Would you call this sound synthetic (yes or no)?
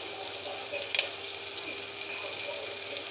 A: no